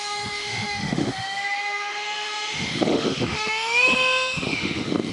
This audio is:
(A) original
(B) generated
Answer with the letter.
B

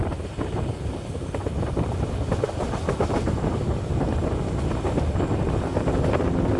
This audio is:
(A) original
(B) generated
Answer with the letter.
A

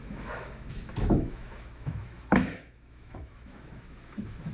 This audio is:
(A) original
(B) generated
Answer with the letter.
B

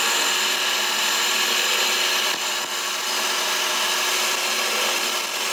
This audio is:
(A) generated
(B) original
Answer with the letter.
B